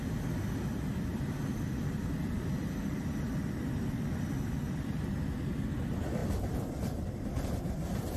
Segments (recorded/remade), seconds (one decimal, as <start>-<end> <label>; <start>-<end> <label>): 0.0-1.1 recorded; 1.1-4.7 remade; 4.7-6.2 recorded; 6.2-7.6 remade; 7.6-8.2 recorded